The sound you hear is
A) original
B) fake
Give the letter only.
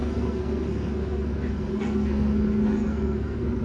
B